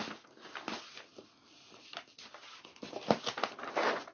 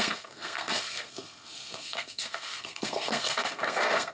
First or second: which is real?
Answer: first